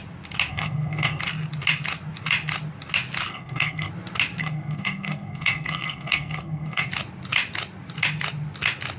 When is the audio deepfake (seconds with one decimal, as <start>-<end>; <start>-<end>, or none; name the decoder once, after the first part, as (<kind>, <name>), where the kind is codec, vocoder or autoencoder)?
0.5-1.2 (codec, SNAC); 3.3-3.9; 4.4-6.9